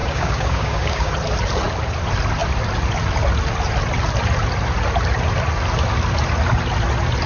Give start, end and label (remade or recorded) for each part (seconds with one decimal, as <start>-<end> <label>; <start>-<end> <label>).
0.0-1.1 remade; 1.1-7.3 recorded